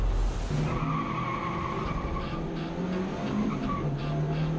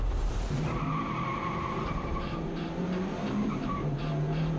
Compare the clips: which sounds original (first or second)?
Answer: first